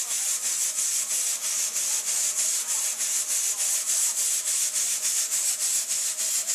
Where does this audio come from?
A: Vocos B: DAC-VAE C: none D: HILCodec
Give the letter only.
C